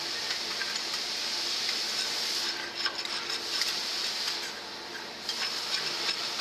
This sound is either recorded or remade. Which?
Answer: recorded